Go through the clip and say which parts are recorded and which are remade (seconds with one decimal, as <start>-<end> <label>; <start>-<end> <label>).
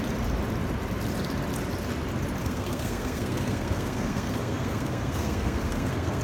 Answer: 0.0-2.4 recorded; 2.4-6.2 remade